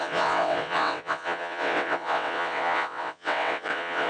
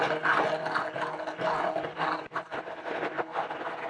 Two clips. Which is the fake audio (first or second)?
first